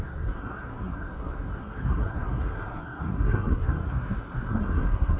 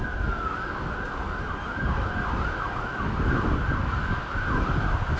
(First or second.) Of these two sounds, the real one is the second